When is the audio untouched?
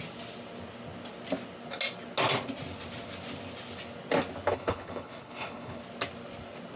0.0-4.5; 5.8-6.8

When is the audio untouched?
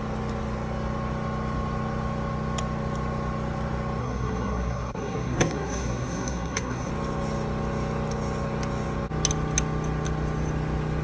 0.0-4.0; 6.9-11.0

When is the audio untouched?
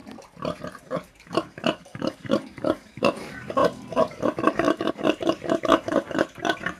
0.0-0.8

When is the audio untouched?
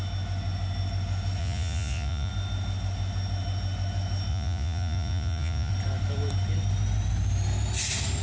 0.0-1.4; 2.3-4.3; 5.7-8.2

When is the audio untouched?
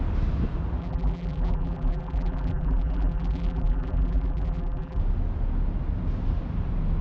0.0-0.8; 5.0-7.0